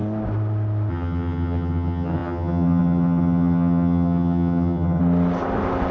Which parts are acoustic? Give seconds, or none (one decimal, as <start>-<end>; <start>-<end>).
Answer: 0.0-0.9; 5.0-5.9